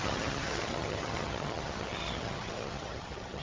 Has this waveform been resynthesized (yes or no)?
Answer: yes